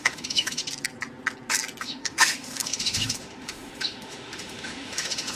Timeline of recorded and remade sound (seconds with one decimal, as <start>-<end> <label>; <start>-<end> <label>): 0.0-0.6 remade; 0.6-1.8 recorded; 1.8-5.4 remade